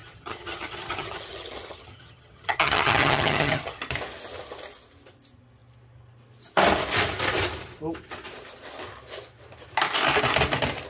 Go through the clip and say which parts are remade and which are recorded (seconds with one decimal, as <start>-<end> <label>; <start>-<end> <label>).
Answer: 0.0-3.8 remade; 3.8-10.9 recorded